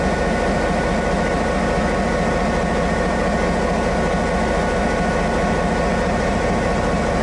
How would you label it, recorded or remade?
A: recorded